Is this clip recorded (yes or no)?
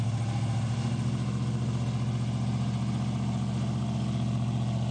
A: yes